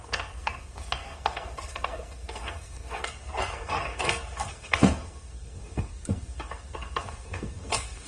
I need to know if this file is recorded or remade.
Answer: remade